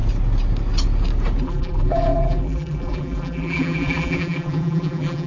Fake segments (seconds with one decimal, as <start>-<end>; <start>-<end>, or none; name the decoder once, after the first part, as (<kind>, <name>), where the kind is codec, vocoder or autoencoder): 1.4-5.3 (vocoder, BigVGAN v2)